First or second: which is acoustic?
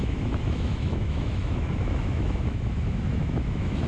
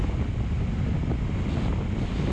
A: second